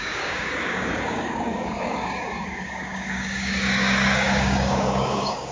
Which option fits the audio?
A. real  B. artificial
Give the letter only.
B